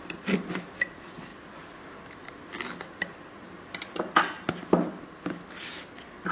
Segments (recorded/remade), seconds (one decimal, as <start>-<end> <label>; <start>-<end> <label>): 0.0-6.3 recorded